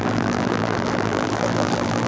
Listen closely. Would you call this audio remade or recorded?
remade